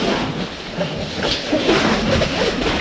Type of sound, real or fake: real